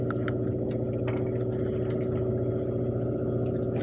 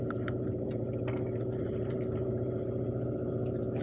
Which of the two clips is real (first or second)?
first